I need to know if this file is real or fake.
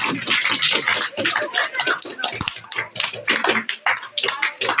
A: real